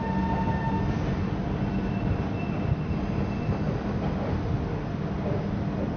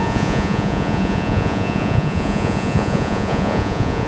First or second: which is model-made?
second